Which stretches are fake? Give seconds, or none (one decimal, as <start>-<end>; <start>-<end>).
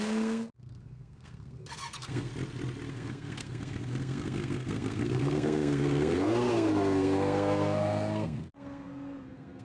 0.0-2.3; 2.9-9.6